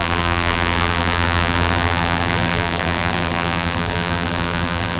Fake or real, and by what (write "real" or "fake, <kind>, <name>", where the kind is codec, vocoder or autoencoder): fake, vocoder, BigVGAN v2